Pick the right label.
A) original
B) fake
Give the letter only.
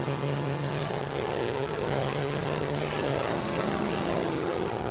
B